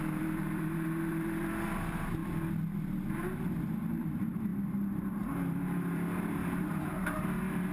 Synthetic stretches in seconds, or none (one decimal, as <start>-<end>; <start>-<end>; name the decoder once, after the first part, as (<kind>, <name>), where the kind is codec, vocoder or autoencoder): 0.0-2.2 (vocoder, BigVGAN v2); 4.0-7.7